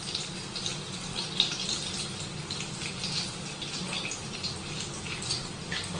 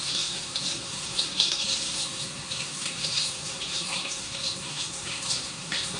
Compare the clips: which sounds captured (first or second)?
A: first